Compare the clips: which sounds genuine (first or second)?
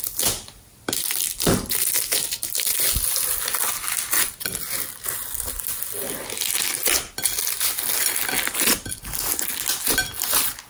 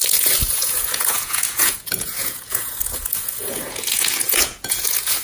first